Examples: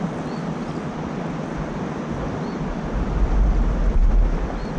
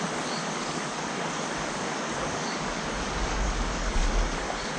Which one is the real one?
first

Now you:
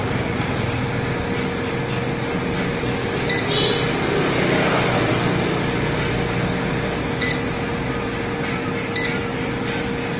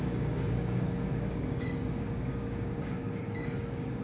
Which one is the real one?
first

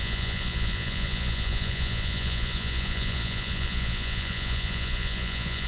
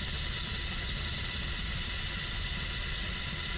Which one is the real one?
second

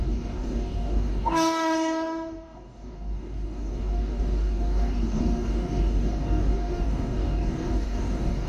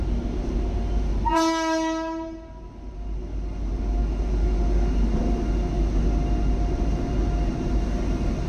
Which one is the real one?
second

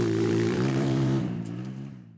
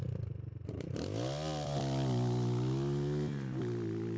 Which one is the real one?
second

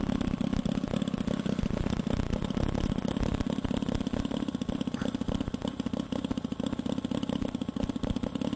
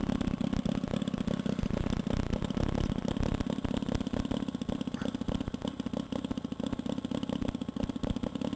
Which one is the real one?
second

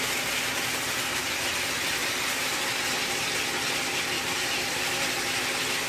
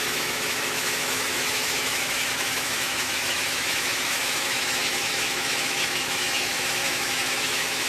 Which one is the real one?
first